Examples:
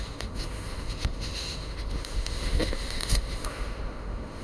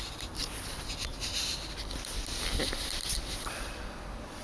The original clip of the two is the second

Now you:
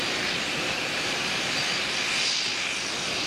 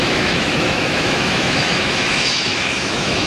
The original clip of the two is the first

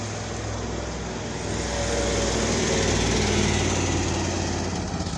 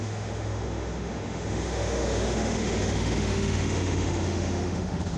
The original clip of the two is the first